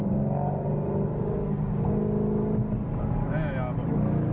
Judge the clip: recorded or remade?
recorded